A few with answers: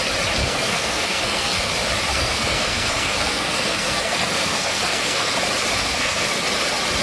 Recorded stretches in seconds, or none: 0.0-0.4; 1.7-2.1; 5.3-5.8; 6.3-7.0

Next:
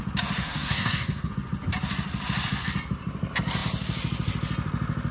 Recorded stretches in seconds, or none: 0.0-0.4; 1.3-5.1

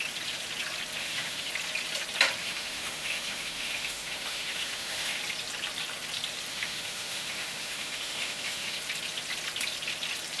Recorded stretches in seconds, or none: 0.0-1.0; 1.5-2.4; 5.2-6.5; 8.8-10.4

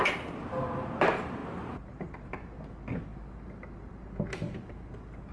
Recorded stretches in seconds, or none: 0.0-5.3

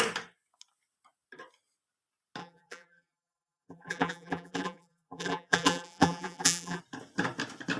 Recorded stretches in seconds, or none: 0.0-2.4; 6.8-7.8